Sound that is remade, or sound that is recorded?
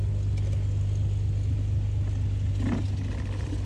recorded